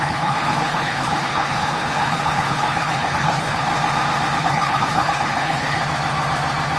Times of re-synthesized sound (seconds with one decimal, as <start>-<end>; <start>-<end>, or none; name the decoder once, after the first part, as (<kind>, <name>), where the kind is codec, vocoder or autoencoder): 0.0-3.7 (codec, HILCodec); 4.4-5.8